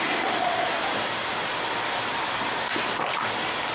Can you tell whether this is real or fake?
real